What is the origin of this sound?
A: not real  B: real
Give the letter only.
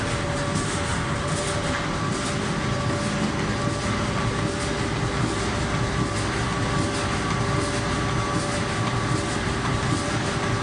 B